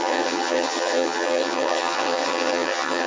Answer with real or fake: fake